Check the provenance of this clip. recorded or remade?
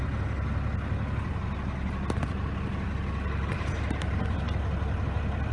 recorded